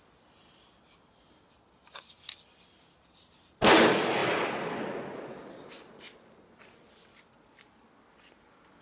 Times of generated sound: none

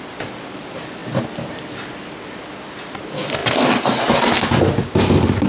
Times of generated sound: none